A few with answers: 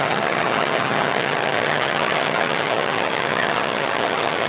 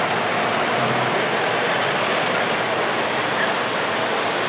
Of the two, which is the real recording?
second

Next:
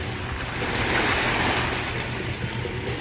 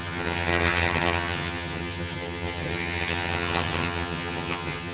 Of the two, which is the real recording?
first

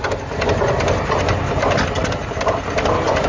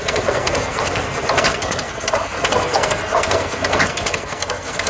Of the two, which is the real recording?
first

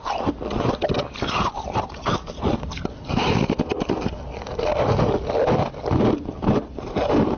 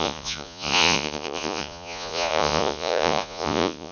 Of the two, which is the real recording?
first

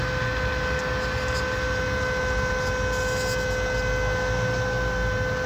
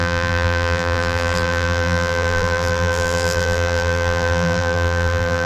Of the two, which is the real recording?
first